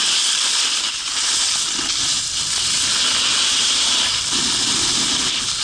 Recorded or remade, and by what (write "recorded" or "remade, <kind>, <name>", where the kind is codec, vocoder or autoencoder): recorded